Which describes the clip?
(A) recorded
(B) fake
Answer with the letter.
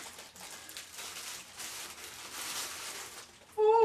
A